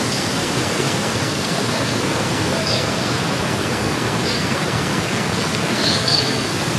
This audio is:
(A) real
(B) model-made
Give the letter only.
B